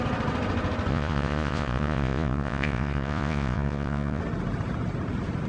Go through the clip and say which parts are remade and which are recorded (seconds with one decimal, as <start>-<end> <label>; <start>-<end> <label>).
0.0-0.9 recorded; 0.9-4.2 remade; 4.2-5.5 recorded